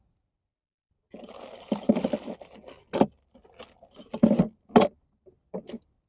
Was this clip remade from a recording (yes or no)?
no